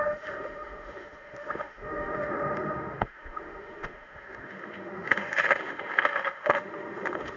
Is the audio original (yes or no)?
no